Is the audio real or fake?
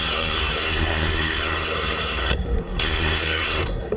fake